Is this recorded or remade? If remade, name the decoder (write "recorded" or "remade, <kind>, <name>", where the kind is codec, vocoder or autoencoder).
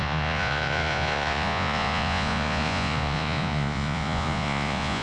remade, vocoder, Vocos